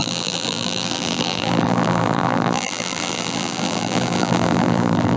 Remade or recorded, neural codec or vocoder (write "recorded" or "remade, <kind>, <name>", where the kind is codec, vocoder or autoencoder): remade, vocoder, BigVGAN v2